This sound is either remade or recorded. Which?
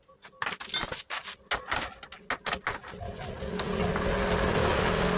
recorded